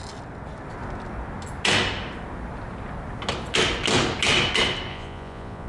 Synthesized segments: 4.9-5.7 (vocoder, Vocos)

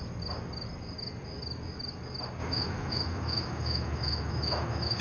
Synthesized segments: 2.4-5.0 (autoencoder, DAC-VAE)

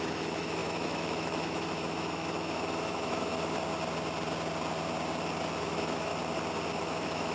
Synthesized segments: 0.0-3.3 (autoencoder, DAC-VAE); 5.6-6.1; 6.8-7.3

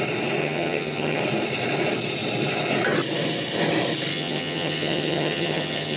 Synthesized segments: 0.4-1.2 (vocoder, HiFi-GAN); 4.1-6.0

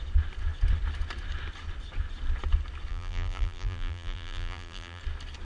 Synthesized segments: 2.9-5.0 (vocoder, BigVGAN v2)

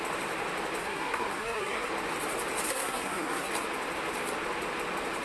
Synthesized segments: 0.8-1.9 (codec, SNAC); 2.7-3.5

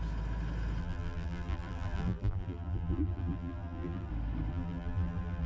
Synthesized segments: 0.8-4.1 (vocoder, BigVGAN v2); 4.5-5.5

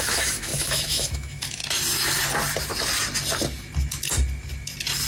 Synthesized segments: 0.0-1.6 (autoencoder, DAC-VAE)